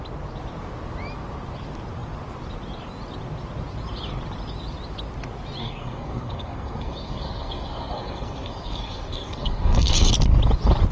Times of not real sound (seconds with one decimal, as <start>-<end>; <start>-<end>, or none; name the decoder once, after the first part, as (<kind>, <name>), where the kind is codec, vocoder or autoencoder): 5.6-10.1 (codec, SNAC)